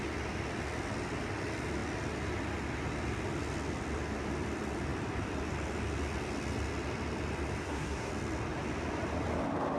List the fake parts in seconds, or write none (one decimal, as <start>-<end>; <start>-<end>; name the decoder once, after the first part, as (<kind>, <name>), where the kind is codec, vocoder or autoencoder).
7.6-8.1 (codec, SNAC)